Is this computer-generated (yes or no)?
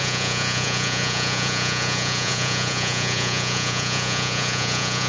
yes